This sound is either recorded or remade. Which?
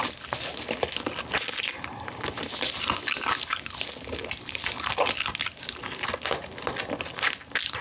recorded